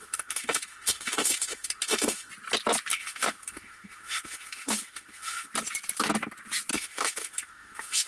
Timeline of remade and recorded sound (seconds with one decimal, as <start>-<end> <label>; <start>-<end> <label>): 0.0-2.3 remade; 2.3-2.9 recorded; 2.9-5.5 remade; 5.5-6.7 recorded; 6.7-8.1 remade